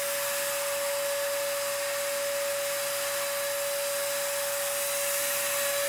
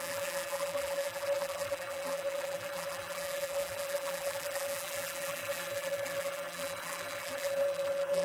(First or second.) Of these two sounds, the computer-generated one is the second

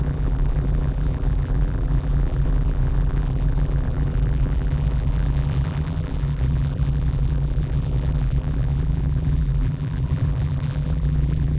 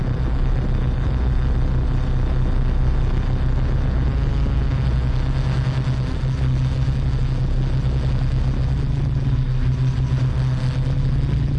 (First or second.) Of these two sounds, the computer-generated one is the first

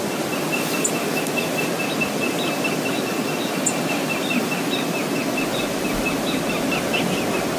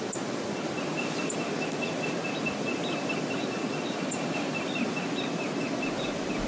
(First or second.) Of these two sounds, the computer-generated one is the second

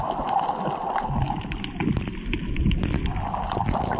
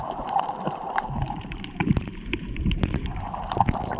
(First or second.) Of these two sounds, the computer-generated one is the second